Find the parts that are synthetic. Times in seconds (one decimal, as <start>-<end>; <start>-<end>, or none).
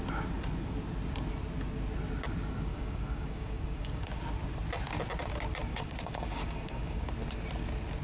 2.7-4.2; 5.7-7.1